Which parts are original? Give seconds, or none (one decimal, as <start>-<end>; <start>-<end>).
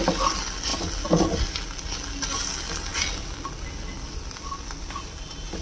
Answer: 0.0-5.6